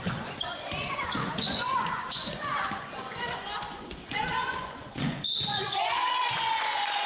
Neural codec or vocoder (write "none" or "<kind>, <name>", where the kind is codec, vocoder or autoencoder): vocoder, Vocos